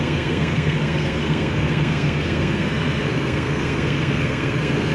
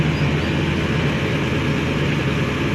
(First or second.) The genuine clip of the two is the second